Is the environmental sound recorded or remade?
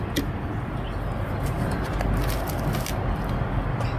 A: recorded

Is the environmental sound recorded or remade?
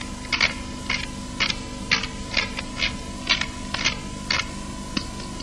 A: recorded